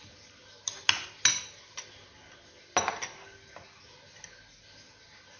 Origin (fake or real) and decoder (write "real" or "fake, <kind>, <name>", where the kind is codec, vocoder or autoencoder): real